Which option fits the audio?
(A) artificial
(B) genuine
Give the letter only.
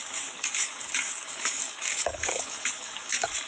A